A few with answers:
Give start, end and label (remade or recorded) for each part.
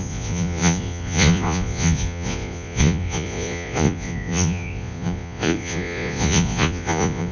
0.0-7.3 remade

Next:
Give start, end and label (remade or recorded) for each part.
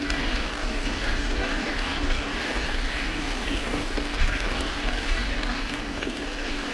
0.0-6.7 remade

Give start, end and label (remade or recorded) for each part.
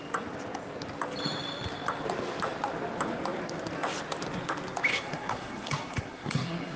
0.0-4.9 recorded; 4.9-6.8 remade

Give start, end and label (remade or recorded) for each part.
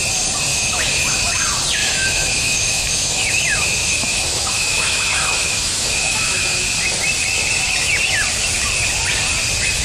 0.0-0.5 recorded; 0.5-1.3 remade; 1.3-1.8 recorded; 1.8-6.6 remade; 6.6-9.8 recorded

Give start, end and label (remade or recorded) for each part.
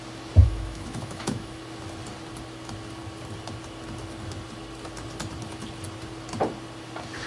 0.0-0.4 recorded; 0.4-1.6 remade; 1.6-7.3 recorded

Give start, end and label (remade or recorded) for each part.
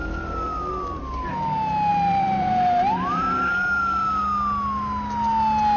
0.0-0.7 remade; 0.7-1.9 recorded; 1.9-4.2 remade; 4.2-5.8 recorded